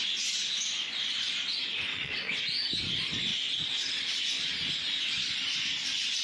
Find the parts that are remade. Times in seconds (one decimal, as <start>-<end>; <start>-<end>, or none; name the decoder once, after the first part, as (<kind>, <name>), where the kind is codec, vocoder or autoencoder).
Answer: 1.9-2.4 (vocoder, WaveNeXt)